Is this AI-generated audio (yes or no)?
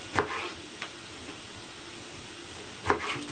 no